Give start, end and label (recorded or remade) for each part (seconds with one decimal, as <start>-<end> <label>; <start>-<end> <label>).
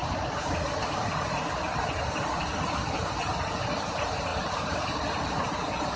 0.0-6.0 recorded